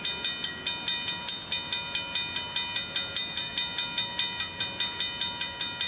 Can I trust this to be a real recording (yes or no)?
yes